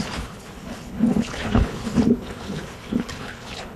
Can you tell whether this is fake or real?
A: fake